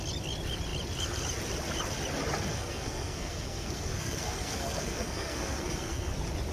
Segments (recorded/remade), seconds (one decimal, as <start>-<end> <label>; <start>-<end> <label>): 0.0-2.5 recorded; 2.5-6.1 remade; 6.1-6.5 recorded